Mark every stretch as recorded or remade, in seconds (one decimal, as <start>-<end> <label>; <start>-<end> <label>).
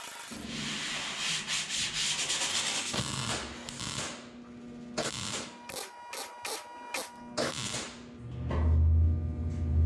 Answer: 0.0-2.5 recorded; 2.5-3.0 remade; 3.0-9.9 recorded